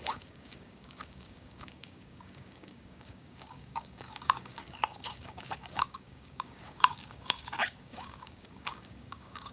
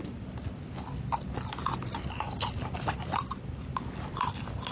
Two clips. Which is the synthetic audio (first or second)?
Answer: first